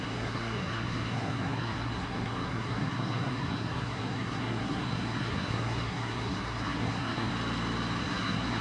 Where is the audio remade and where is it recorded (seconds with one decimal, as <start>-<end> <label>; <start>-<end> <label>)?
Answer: 0.0-7.3 remade; 7.3-8.0 recorded; 8.0-8.6 remade